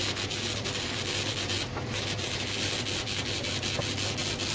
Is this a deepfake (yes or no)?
no